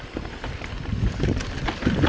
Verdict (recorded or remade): remade